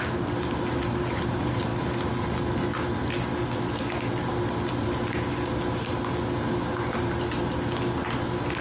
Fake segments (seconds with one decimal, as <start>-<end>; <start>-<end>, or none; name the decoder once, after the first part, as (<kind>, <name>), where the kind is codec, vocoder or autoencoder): none